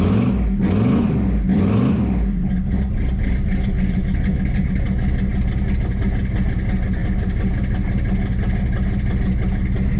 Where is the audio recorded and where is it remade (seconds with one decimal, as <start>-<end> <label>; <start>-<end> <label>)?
0.0-10.0 recorded